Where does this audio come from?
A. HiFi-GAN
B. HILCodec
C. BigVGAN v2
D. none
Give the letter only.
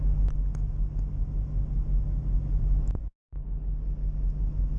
D